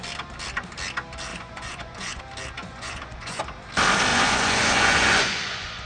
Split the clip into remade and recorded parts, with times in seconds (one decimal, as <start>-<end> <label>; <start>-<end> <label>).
0.0-1.3 recorded; 1.3-2.2 remade; 2.2-2.6 recorded; 2.6-3.4 remade; 3.4-4.1 recorded; 4.1-5.9 remade

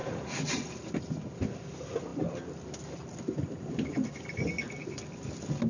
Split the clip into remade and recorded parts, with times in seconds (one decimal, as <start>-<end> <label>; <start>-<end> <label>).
0.0-5.7 recorded

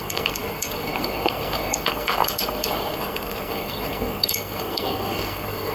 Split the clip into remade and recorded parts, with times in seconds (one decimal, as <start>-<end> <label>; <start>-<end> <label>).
0.0-5.7 remade

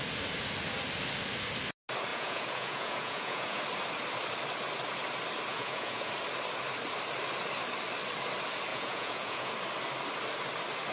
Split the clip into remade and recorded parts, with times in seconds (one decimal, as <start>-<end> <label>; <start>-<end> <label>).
0.0-2.1 recorded; 2.1-3.6 remade; 3.6-5.5 recorded; 5.5-6.1 remade; 6.1-8.7 recorded; 8.7-9.5 remade; 9.5-10.9 recorded

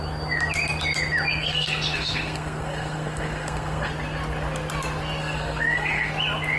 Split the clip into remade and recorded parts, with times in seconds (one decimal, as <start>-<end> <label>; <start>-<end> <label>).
0.0-1.4 recorded; 1.4-3.9 remade; 3.9-5.2 recorded; 5.2-6.1 remade; 6.1-6.6 recorded

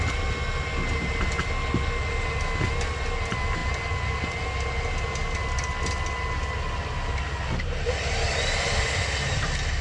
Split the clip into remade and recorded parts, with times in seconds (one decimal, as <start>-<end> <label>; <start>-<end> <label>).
0.0-9.8 recorded

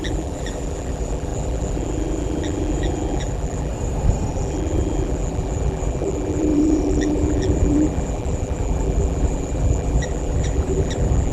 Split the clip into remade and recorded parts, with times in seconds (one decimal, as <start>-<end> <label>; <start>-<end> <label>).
0.0-3.7 remade; 3.7-4.3 recorded; 4.3-11.3 remade

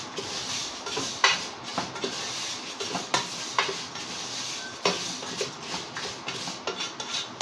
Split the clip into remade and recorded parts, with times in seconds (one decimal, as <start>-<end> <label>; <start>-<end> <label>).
0.0-7.4 recorded